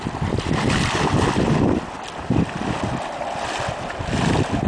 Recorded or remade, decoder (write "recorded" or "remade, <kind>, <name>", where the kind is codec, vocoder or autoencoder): recorded